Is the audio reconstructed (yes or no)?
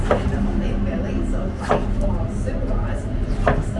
no